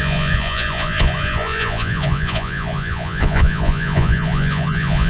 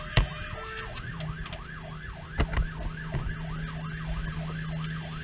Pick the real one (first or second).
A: second